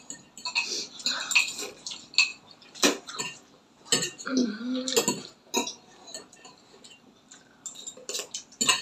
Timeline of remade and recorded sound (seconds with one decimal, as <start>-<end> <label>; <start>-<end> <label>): 0.0-8.8 recorded